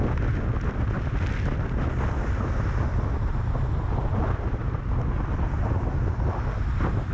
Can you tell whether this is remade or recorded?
recorded